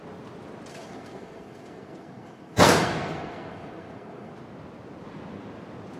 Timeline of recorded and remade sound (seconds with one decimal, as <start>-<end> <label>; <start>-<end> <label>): 0.0-0.7 recorded; 0.7-4.3 remade; 4.3-6.0 recorded